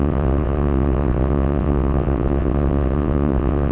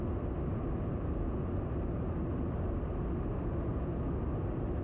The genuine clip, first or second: second